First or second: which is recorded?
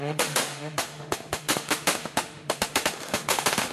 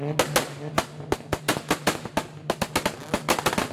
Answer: second